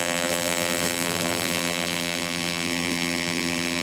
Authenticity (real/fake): fake